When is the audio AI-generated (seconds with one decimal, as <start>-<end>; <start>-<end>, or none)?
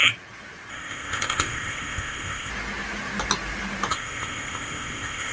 0.7-2.5; 3.9-5.3